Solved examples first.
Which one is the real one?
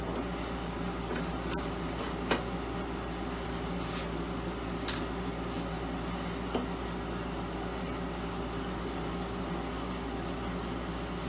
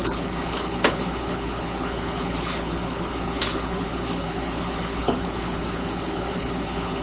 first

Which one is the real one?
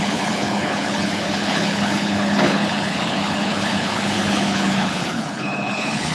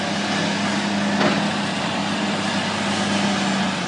second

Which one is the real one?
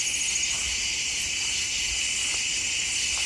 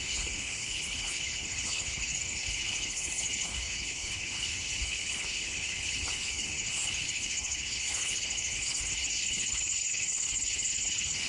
first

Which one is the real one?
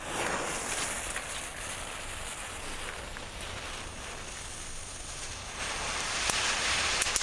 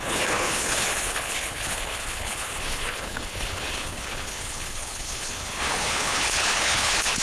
first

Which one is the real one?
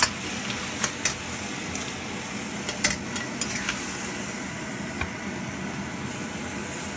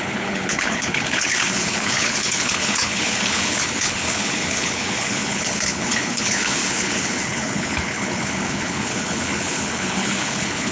first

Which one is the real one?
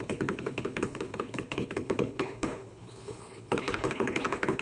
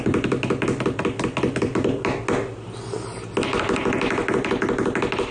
second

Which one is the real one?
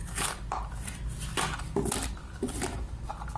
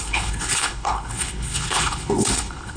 first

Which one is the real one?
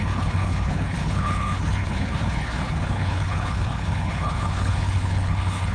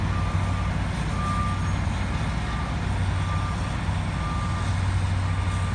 second